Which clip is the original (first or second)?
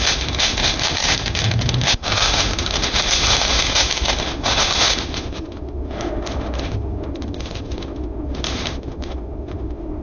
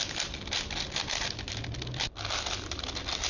second